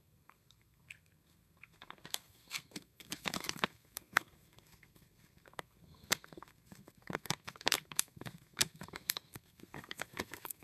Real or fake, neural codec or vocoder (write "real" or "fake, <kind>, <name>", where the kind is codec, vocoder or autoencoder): fake, codec, SNAC